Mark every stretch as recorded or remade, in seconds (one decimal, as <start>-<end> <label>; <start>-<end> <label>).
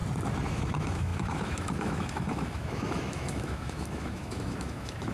0.0-0.5 recorded; 0.5-5.1 remade